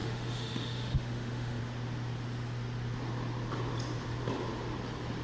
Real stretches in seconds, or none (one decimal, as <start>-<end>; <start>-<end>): 1.6-5.2